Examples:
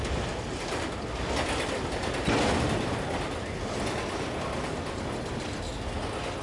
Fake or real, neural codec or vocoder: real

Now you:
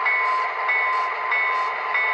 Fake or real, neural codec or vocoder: real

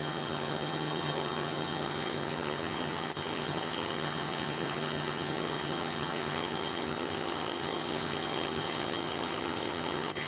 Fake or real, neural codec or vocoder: fake, vocoder, HiFi-GAN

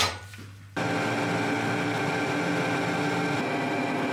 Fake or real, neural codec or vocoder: real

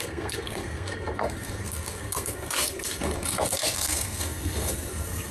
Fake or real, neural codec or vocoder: fake, codec, SNAC